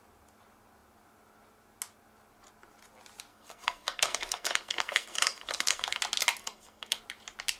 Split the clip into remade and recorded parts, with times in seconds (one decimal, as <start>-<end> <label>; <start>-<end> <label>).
0.0-3.3 recorded; 3.3-6.0 remade; 6.0-6.4 recorded; 6.4-7.0 remade; 7.0-7.6 recorded